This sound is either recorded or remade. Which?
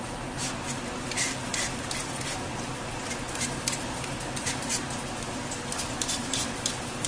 recorded